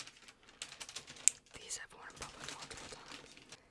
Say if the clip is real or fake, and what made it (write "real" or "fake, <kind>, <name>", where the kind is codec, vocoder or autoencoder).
real